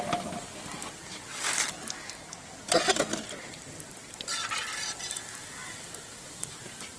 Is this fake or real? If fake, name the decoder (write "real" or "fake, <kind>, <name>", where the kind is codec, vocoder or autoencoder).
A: real